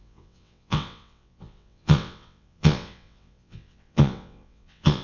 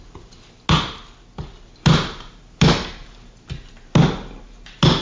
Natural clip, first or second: second